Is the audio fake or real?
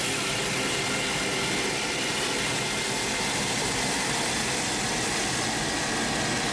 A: real